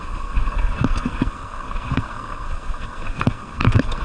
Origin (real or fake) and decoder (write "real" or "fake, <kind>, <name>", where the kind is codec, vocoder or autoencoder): fake, codec, SNAC